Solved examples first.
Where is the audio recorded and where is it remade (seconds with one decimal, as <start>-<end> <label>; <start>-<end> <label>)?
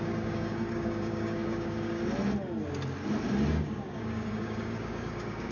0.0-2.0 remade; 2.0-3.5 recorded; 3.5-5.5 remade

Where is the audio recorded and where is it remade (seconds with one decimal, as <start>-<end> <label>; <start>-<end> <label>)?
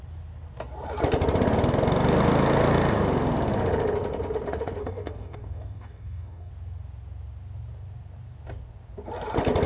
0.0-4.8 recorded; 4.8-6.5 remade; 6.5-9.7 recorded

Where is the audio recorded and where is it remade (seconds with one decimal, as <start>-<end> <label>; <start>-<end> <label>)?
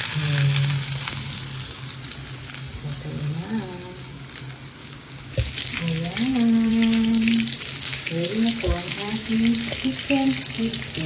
0.0-4.8 recorded; 4.8-5.8 remade; 5.8-6.7 recorded; 6.7-9.3 remade; 9.3-11.1 recorded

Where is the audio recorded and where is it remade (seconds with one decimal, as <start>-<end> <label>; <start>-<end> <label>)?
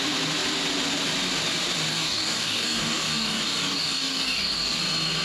0.0-1.9 recorded; 1.9-4.8 remade; 4.8-5.2 recorded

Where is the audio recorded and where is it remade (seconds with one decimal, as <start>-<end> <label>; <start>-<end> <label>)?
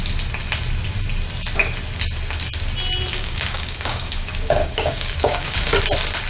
0.0-3.1 recorded; 3.1-5.7 remade; 5.7-6.3 recorded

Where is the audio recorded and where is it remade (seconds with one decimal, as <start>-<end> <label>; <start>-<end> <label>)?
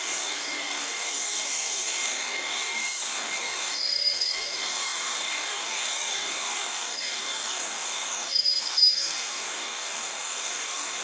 0.0-11.0 remade